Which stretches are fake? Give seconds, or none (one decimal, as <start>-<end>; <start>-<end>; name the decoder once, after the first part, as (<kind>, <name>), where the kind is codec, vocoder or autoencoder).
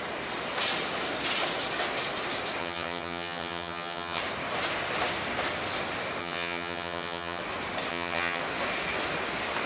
2.6-4.2 (vocoder, HiFi-GAN); 6.2-7.4; 7.9-8.4